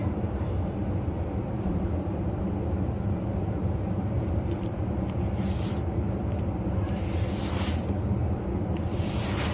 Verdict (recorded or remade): remade